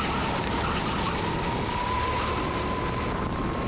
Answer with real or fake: real